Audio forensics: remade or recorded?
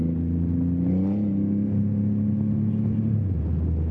recorded